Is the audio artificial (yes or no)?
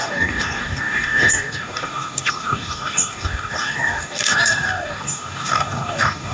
yes